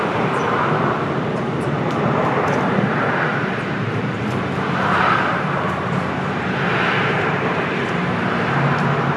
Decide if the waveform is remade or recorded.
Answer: remade